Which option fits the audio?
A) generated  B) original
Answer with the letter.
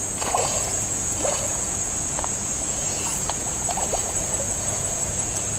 A